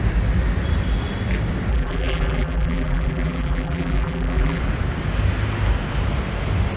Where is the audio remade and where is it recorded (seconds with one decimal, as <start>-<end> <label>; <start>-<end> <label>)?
0.0-1.7 recorded; 1.7-4.6 remade; 4.6-6.8 recorded